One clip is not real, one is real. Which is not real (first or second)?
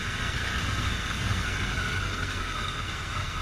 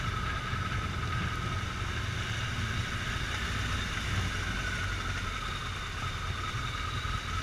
first